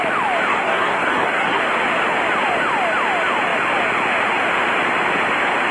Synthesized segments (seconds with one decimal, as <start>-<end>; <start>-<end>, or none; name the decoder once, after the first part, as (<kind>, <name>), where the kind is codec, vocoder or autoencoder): 0.5-1.6 (codec, SNAC)